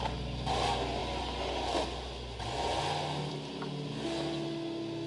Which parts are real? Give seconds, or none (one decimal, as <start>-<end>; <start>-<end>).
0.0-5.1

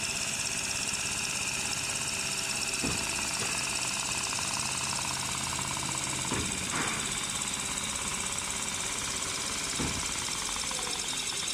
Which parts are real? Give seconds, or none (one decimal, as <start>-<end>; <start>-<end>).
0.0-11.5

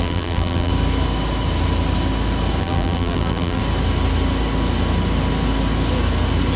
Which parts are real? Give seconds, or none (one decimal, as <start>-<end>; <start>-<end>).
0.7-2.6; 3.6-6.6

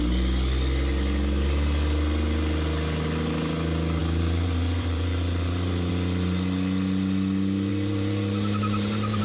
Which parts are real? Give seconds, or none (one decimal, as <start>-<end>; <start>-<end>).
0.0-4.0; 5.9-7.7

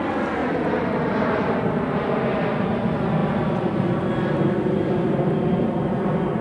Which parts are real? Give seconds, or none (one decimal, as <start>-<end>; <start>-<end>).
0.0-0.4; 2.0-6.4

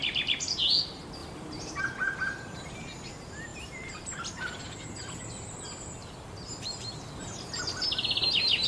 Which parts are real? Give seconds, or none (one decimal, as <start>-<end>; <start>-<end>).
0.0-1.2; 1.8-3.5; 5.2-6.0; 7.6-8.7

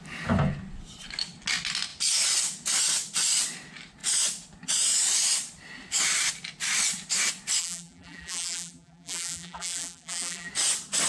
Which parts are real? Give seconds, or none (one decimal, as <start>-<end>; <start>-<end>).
0.0-7.6; 10.5-11.1